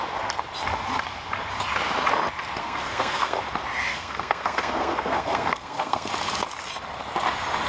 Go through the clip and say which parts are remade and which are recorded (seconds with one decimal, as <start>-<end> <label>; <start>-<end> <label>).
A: 0.0-2.6 recorded; 2.6-3.4 remade; 3.4-3.9 recorded; 3.9-6.1 remade; 6.1-7.7 recorded